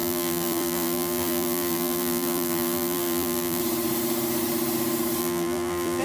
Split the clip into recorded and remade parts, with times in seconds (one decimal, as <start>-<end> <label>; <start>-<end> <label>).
0.0-3.6 remade; 3.6-5.2 recorded; 5.2-6.0 remade